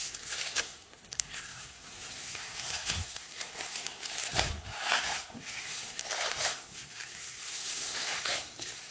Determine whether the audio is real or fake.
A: fake